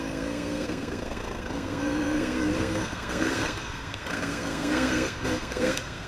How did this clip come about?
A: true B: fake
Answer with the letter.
B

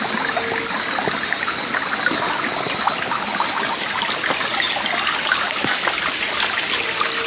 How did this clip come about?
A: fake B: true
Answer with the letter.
B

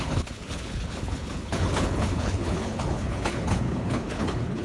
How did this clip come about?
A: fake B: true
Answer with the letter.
A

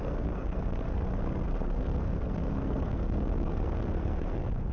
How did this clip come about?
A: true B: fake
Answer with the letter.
B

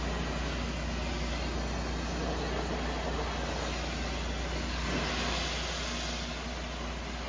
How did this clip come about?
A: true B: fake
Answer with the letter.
A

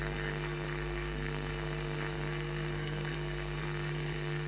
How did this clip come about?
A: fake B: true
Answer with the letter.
A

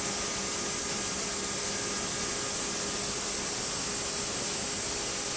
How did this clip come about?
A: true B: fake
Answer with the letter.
A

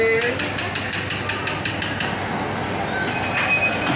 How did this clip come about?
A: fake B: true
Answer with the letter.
B